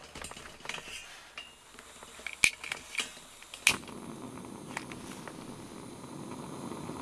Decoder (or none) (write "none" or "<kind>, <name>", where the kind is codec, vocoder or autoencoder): none